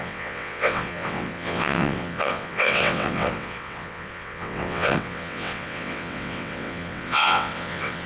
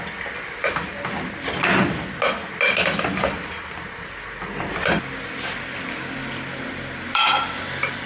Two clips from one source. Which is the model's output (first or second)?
first